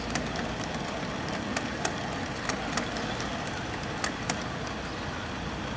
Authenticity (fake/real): real